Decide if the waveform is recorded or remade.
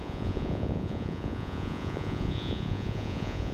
remade